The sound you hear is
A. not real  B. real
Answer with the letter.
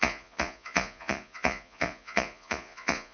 A